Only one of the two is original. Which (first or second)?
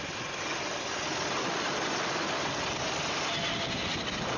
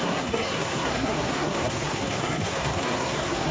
first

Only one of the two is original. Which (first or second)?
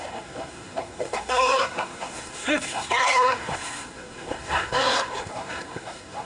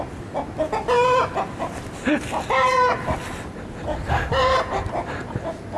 second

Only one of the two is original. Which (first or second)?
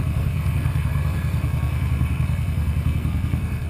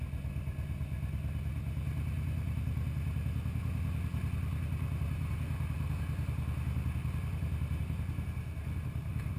second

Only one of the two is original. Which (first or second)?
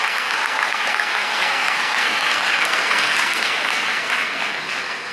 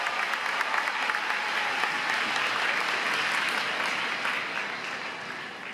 second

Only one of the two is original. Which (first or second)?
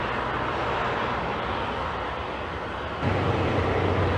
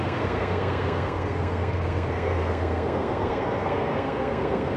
first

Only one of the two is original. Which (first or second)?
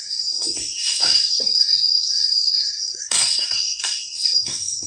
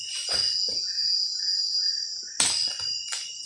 second